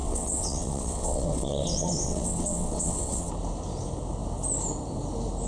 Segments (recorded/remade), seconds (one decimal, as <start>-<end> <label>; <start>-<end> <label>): 0.0-3.3 remade; 3.3-5.5 recorded